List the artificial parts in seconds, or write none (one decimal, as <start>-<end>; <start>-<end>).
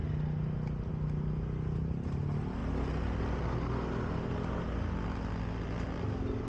none